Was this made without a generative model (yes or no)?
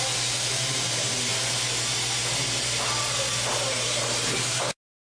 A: yes